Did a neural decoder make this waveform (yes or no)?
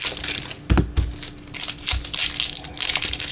no